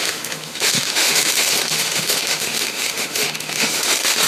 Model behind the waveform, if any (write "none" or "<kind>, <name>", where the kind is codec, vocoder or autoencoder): autoencoder, DAC-VAE